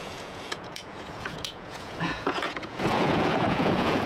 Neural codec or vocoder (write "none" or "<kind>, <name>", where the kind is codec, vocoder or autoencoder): vocoder, Vocos